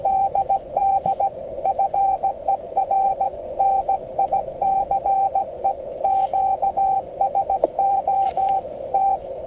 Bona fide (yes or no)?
no